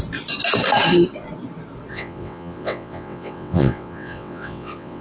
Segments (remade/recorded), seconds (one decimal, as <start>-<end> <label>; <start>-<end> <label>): 0.0-1.9 recorded; 1.9-5.0 remade